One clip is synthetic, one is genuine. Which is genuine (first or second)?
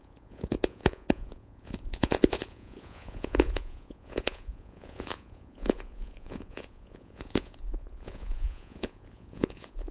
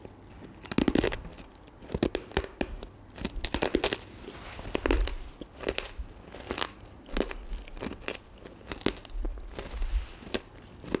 second